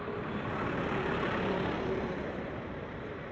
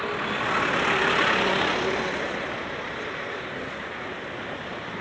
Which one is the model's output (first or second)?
first